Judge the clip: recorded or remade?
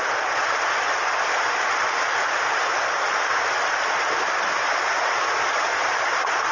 recorded